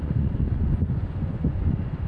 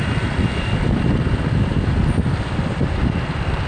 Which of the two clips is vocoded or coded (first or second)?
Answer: first